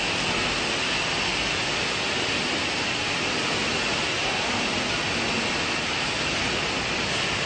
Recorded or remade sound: recorded